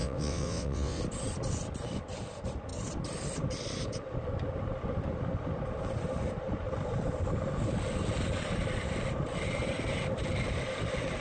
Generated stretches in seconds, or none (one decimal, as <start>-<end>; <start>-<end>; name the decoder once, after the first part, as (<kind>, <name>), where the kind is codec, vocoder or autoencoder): 0.0-1.0 (vocoder, WaveNeXt)